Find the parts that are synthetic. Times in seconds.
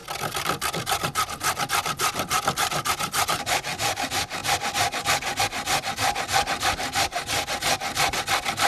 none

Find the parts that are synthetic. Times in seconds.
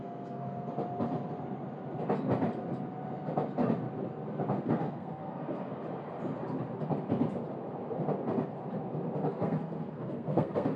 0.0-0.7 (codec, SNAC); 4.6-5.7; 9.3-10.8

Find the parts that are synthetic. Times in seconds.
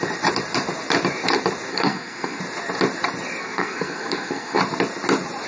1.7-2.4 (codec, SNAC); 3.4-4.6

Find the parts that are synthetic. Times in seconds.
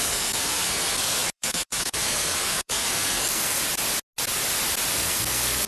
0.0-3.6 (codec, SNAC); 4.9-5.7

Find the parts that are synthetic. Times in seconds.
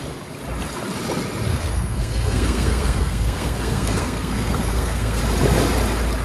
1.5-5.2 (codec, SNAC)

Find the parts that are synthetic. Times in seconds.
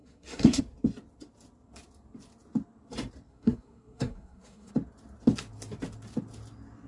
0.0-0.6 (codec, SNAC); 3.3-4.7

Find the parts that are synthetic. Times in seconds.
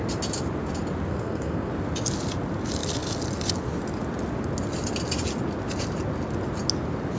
1.1-1.7 (codec, SNAC)